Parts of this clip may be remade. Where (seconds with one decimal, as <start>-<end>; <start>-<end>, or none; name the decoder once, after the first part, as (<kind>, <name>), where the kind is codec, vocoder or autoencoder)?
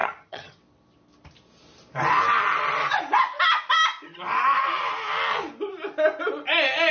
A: 0.0-0.6 (vocoder, HiFi-GAN)